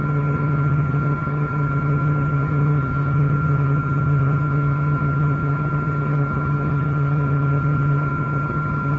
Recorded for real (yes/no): no